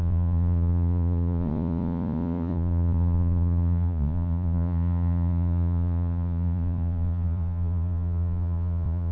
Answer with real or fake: fake